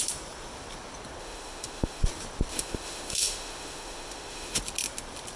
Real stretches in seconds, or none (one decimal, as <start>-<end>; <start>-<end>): 0.0-1.2; 2.0-2.5; 4.6-5.4